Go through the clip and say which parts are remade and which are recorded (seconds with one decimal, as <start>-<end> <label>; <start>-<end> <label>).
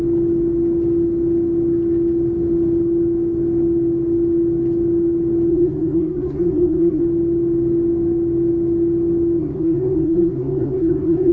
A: 0.0-5.5 recorded; 5.5-7.0 remade; 7.0-9.4 recorded; 9.4-11.3 remade